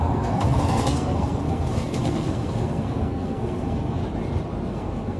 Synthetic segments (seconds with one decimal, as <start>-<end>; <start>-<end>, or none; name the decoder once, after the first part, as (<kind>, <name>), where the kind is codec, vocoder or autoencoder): 0.0-4.0 (codec, SNAC); 4.7-5.2